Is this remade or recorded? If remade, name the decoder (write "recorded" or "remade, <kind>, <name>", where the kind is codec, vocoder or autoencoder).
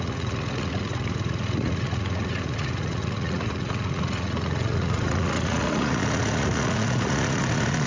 remade, vocoder, Vocos